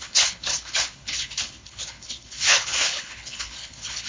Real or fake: fake